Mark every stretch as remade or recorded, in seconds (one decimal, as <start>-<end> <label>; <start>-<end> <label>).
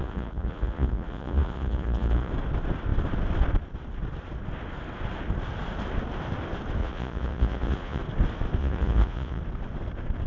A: 0.0-2.3 remade; 2.3-6.8 recorded; 6.8-8.0 remade; 8.0-8.6 recorded; 8.6-9.4 remade; 9.4-10.3 recorded